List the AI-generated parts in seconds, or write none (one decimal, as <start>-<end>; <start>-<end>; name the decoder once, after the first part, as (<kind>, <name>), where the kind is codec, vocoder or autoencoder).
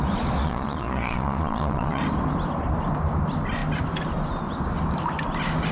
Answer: 0.4-2.0 (vocoder, Vocos)